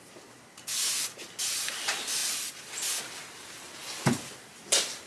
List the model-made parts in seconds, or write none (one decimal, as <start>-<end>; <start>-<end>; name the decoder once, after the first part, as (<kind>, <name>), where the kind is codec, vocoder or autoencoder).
none